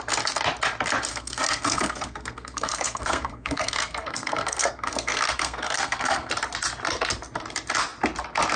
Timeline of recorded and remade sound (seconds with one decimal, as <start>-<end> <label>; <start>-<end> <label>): 0.0-1.1 recorded; 1.1-6.3 remade; 6.3-8.6 recorded